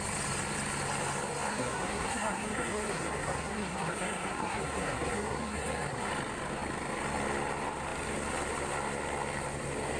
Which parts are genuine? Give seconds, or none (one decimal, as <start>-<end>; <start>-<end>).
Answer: 0.0-1.5; 6.1-10.0